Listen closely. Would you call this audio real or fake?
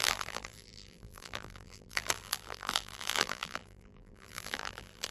fake